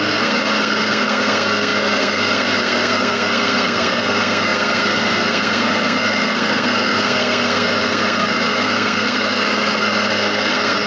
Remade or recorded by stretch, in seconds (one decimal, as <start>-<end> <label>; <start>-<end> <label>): 0.0-10.9 remade